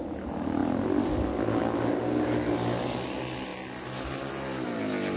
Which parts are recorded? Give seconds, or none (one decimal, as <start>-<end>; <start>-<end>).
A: 0.0-5.2